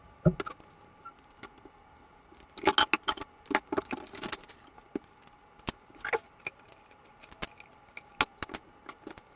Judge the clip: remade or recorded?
recorded